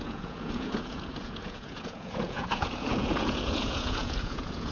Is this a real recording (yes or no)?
no